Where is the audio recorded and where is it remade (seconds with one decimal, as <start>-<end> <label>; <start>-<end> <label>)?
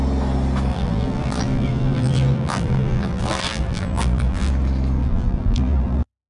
0.0-0.7 recorded; 0.7-4.5 remade; 4.5-5.0 recorded; 5.0-6.3 remade